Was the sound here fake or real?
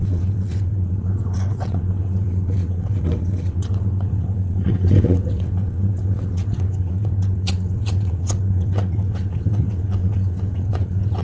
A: fake